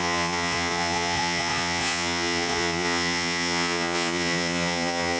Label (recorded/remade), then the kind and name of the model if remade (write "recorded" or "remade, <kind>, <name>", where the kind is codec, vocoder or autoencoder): remade, vocoder, Vocos